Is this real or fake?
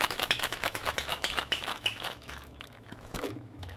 fake